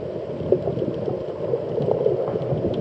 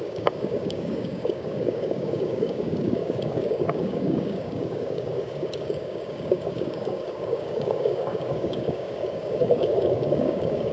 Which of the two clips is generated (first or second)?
second